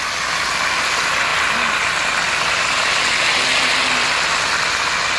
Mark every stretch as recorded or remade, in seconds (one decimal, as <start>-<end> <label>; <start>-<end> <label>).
0.0-5.2 recorded